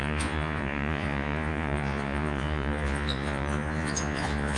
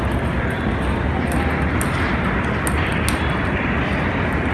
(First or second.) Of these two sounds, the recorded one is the second